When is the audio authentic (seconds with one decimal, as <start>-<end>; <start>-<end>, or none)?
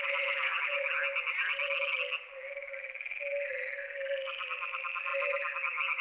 0.0-6.0